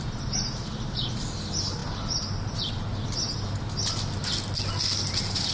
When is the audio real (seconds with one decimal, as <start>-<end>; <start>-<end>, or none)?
0.0-5.5